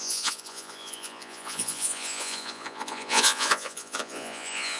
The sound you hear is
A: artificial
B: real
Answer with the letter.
A